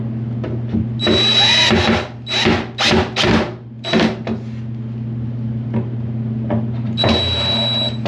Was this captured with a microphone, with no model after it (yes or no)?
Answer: yes